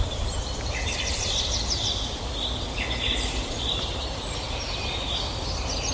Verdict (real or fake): real